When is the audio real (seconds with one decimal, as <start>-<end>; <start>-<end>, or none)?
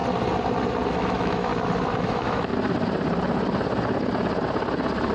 0.0-0.9; 1.5-2.0; 2.5-5.1